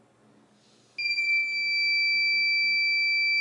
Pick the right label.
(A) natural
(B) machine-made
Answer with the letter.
A